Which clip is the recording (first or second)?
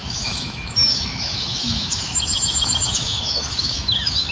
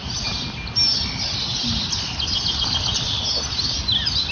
second